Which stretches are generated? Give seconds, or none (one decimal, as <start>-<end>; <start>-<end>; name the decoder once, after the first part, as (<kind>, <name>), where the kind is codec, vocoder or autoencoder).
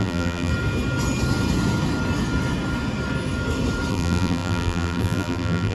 0.0-0.5 (vocoder, BigVGAN v2); 3.9-5.7